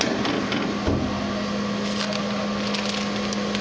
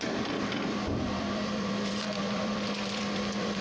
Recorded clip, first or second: first